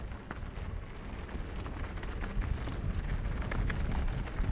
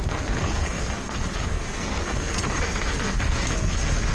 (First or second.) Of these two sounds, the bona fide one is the first